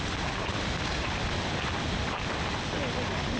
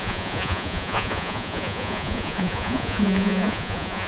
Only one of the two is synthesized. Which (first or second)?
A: second